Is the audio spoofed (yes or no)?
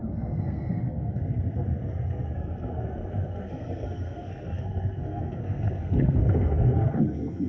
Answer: yes